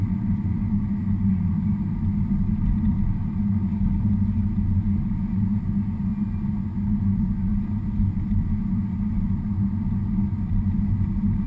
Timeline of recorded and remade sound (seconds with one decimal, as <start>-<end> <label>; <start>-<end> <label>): 0.0-11.5 recorded